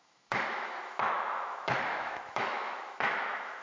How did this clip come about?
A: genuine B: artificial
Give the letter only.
B